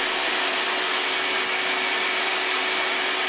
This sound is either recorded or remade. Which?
recorded